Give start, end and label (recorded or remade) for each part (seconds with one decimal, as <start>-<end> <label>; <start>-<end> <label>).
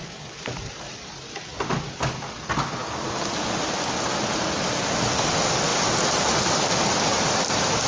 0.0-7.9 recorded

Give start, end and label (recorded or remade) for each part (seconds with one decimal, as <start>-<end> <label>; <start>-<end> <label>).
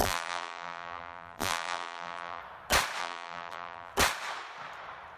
0.0-2.4 remade; 2.4-3.0 recorded; 3.0-3.9 remade; 3.9-5.2 recorded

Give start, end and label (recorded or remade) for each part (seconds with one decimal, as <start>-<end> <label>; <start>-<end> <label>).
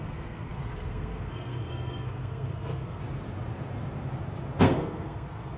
0.0-3.0 remade; 3.0-4.6 recorded; 4.6-5.6 remade